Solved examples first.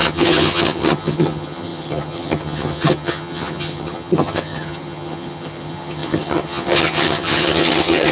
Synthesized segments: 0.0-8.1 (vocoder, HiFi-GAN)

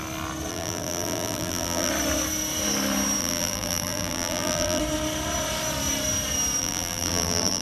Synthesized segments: 0.5-1.9 (vocoder, BigVGAN v2); 3.2-4.8; 6.6-7.6

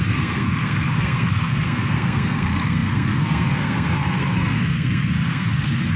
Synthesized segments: 0.0-6.0 (codec, SNAC)

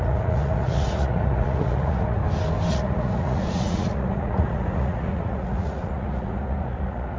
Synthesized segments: 0.0-2.2 (vocoder, Vocos); 2.7-7.2

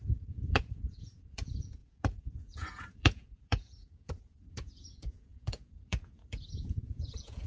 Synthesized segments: 0.0-7.5 (vocoder, Vocos)

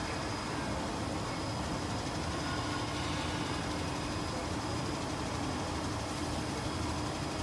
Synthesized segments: none

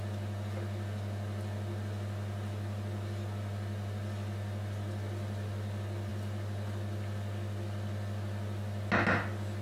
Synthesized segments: none

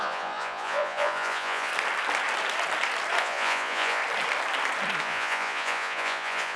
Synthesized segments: 0.0-1.7 (vocoder, Vocos); 3.2-4.0; 5.0-6.6